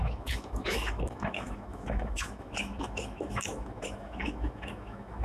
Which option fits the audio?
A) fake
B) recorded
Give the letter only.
A